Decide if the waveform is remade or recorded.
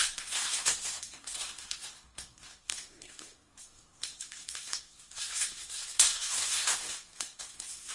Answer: remade